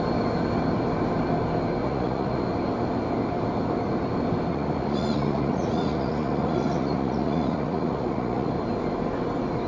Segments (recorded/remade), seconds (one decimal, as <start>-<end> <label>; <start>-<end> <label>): 0.0-1.8 recorded; 1.8-2.4 remade; 2.4-4.5 recorded; 4.5-8.5 remade; 8.5-9.7 recorded